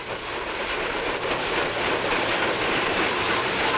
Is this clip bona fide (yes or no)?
no